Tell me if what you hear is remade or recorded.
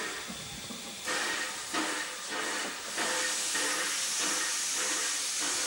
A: recorded